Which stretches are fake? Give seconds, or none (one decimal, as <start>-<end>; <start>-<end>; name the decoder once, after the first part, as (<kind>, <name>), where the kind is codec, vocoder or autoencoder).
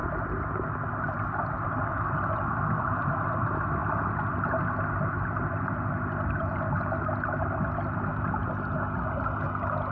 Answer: 0.0-3.1 (vocoder, BigVGAN v2); 3.8-4.6